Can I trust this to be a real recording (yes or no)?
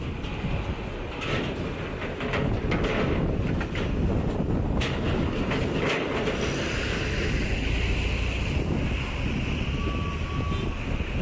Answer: yes